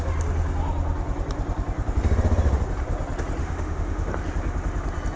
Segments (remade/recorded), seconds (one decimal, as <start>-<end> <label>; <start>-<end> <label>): 0.0-3.4 recorded; 3.4-4.1 remade; 4.1-5.2 recorded